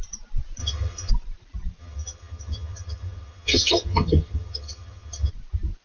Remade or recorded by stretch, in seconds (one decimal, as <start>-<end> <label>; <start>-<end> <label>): 0.0-0.6 recorded; 0.6-1.1 remade; 1.1-1.8 recorded; 1.8-5.3 remade; 5.3-5.8 recorded